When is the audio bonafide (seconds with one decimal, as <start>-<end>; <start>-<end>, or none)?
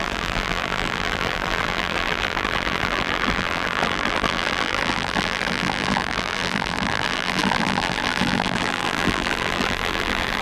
none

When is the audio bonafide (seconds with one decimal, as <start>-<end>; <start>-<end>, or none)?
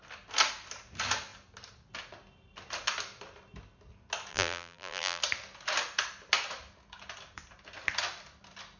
0.0-4.3; 5.2-8.8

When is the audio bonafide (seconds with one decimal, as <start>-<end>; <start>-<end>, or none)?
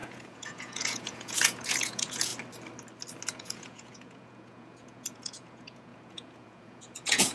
2.3-3.3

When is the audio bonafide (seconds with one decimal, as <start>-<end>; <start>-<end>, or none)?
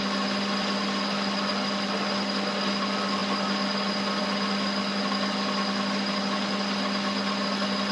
0.0-7.9